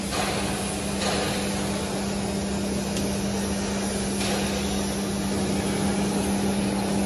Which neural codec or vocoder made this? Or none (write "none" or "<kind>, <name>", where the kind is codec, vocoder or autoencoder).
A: none